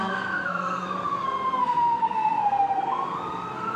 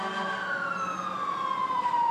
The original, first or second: second